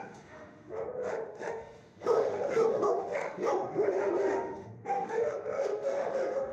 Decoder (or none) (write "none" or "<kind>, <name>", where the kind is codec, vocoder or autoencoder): autoencoder, DAC-VAE